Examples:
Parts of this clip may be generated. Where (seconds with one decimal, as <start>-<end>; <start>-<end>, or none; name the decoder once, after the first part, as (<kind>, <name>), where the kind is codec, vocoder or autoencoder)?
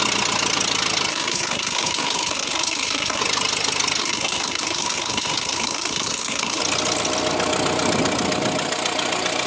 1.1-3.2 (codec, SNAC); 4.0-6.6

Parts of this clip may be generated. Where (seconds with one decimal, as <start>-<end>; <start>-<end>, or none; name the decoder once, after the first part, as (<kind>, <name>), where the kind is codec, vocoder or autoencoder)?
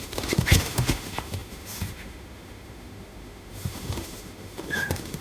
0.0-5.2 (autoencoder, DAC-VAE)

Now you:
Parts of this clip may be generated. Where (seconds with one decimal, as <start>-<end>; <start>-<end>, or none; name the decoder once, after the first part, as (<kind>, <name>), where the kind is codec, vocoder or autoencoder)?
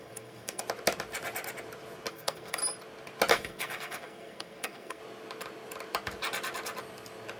0.0-0.6 (codec, SNAC); 2.1-2.6; 3.3-5.0